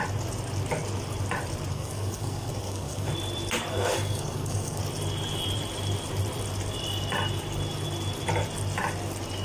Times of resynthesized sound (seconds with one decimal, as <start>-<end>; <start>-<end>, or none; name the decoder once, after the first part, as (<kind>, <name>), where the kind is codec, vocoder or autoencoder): 1.7-3.1 (codec, SNAC); 3.7-4.8